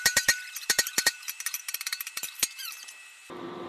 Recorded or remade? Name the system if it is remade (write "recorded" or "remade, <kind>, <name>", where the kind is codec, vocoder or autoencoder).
remade, vocoder, BigVGAN v2